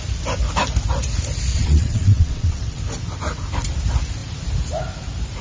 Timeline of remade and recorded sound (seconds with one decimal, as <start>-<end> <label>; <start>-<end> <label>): 0.0-1.5 recorded; 1.5-2.8 remade; 2.8-5.4 recorded